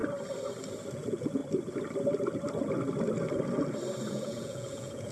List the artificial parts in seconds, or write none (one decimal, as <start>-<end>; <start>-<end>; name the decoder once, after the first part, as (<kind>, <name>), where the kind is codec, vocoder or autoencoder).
0.9-1.4 (vocoder, Vocos); 4.1-5.1